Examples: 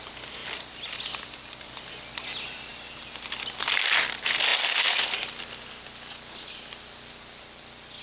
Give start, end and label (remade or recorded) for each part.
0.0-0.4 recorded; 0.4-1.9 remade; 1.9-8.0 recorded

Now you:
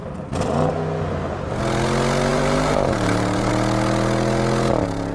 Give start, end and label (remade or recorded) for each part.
0.0-2.3 recorded; 2.3-3.5 remade; 3.5-5.1 recorded

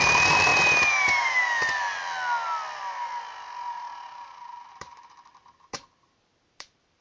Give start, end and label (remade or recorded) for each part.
0.0-0.5 remade; 0.5-4.7 recorded; 4.7-7.0 remade

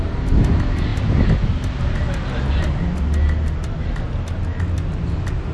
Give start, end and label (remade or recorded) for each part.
0.0-5.5 recorded

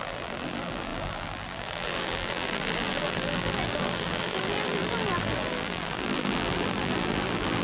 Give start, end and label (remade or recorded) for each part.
0.0-7.6 remade

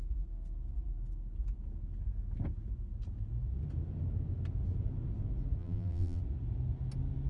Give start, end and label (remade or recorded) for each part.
0.0-5.6 recorded; 5.6-6.2 remade; 6.2-7.3 recorded